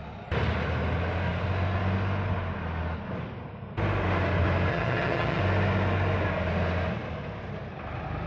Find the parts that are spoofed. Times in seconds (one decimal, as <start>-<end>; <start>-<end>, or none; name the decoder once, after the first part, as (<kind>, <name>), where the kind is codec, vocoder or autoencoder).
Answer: 4.7-5.4 (vocoder, HiFi-GAN)